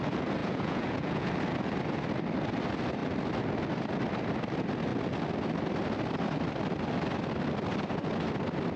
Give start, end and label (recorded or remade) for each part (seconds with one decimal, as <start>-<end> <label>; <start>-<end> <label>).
0.0-0.4 recorded; 0.4-1.3 remade; 1.3-8.8 recorded